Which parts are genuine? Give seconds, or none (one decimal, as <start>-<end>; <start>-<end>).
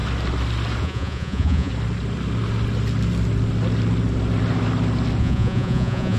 0.0-0.8; 1.7-5.2